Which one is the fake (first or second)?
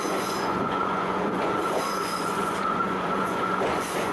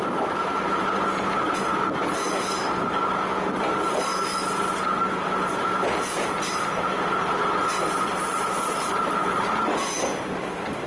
first